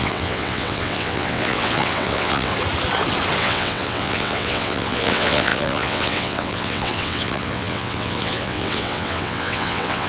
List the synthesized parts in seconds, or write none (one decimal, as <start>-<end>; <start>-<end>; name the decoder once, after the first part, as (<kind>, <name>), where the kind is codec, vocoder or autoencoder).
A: 0.0-2.5 (vocoder, WaveNeXt); 3.4-10.1